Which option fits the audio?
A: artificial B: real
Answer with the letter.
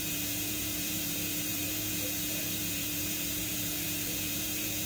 A